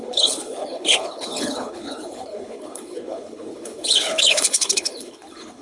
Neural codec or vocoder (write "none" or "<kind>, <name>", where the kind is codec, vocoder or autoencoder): codec, HILCodec